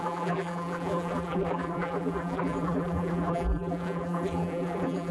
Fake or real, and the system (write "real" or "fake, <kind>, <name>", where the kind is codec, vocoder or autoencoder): fake, vocoder, BigVGAN v2